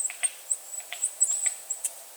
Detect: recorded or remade remade